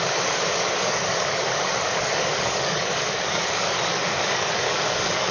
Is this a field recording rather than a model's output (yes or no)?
no